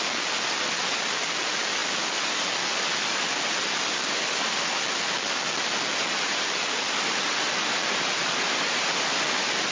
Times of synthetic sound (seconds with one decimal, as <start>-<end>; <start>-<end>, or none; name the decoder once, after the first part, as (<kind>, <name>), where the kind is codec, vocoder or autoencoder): none